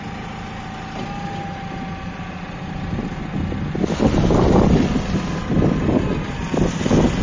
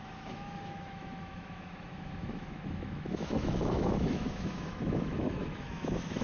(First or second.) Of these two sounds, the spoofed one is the second